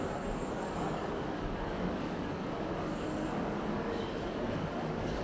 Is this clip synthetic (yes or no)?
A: yes